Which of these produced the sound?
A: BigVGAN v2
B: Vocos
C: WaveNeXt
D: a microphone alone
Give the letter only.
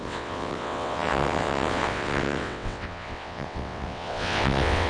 C